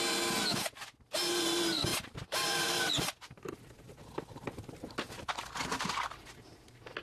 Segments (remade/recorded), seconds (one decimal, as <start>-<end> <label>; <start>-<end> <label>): 0.0-1.9 recorded; 1.9-2.9 remade; 2.9-7.0 recorded